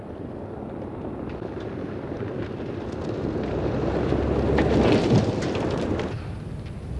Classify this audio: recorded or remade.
recorded